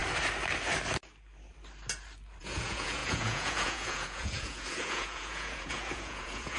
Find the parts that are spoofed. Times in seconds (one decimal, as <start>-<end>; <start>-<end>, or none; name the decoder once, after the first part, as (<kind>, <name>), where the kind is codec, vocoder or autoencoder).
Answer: 2.4-6.6 (vocoder, Vocos)